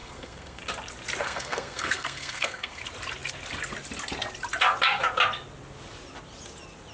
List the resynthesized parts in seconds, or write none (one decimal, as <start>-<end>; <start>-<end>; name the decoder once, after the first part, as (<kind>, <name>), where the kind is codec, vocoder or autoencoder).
0.0-0.6 (codec, SNAC); 1.2-2.8

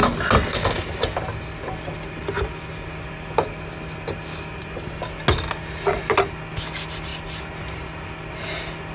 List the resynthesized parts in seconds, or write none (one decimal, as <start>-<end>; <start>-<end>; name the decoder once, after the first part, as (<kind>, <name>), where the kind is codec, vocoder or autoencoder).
none

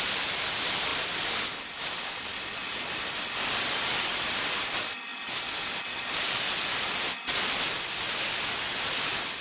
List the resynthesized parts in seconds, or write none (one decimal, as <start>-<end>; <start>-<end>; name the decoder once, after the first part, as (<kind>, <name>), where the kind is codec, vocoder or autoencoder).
none

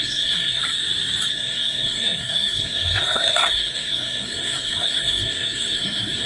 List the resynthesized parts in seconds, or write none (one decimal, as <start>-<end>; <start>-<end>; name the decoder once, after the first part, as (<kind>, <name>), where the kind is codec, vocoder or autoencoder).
0.0-0.6 (codec, SNAC); 1.3-6.3

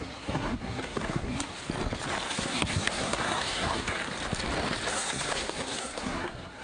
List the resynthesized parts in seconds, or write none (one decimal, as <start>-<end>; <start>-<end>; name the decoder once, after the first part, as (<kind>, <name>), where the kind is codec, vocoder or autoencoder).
0.0-1.6 (codec, SNAC); 2.3-4.0; 4.9-6.6

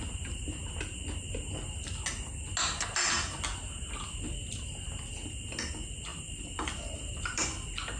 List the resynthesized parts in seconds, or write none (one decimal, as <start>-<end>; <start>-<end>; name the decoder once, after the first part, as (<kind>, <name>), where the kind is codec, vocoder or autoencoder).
none

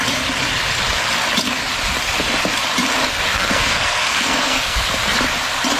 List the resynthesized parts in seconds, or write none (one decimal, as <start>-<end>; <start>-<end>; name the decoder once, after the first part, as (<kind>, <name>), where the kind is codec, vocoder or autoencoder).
3.3-5.1 (codec, SNAC)